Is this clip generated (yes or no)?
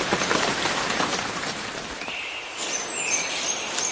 yes